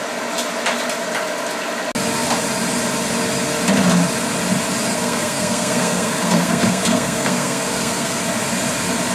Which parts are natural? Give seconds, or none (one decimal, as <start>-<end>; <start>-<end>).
0.0-4.9; 8.2-9.1